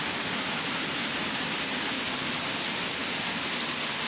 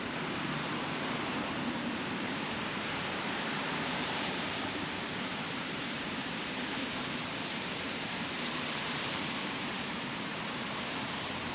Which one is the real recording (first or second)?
first